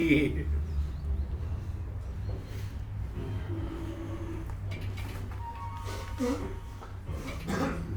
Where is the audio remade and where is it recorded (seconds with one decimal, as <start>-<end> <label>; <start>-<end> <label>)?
0.0-8.0 recorded